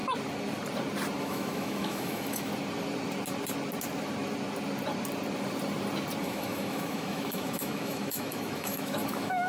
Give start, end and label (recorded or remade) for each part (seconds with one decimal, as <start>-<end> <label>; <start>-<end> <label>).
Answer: 0.0-1.2 recorded; 1.2-2.5 remade; 2.5-6.2 recorded; 6.2-9.5 remade